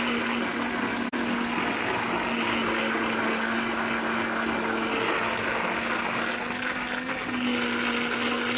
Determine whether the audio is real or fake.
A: real